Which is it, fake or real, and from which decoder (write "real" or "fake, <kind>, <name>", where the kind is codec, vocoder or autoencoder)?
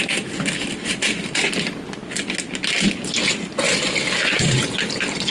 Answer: real